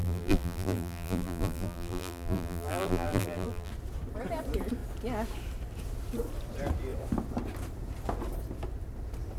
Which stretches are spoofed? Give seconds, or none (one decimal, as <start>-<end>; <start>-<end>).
0.0-3.7